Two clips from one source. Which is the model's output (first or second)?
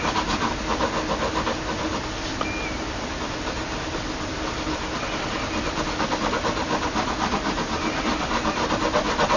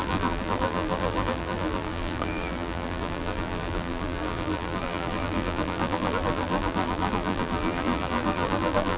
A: second